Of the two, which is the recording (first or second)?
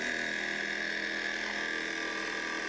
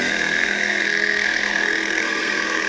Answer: first